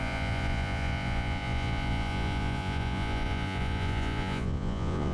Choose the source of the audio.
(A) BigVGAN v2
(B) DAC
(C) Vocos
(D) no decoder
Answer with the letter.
C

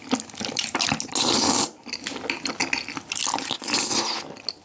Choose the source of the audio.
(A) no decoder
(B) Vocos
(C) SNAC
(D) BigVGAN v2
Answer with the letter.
A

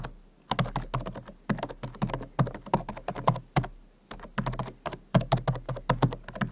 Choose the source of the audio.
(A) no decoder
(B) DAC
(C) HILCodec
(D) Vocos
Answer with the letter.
A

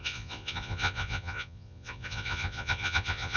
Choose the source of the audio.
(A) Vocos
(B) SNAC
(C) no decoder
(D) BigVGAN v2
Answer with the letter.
A